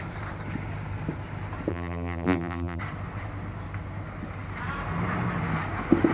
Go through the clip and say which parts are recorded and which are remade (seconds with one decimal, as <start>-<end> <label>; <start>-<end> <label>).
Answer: 0.0-1.7 recorded; 1.7-2.8 remade; 2.8-6.1 recorded